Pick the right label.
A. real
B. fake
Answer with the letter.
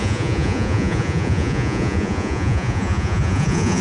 B